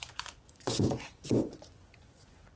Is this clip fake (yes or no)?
yes